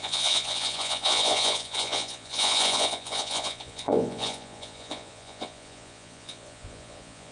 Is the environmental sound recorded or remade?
remade